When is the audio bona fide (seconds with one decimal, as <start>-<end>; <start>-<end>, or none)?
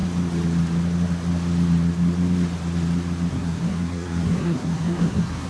0.0-3.3